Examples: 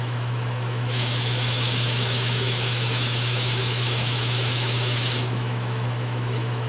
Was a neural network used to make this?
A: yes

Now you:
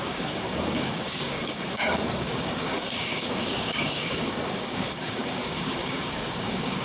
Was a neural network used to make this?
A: yes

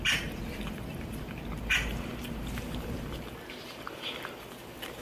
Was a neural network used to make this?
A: yes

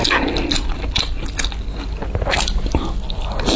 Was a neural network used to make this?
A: no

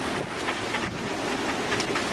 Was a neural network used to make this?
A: no